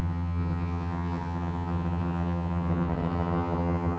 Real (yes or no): no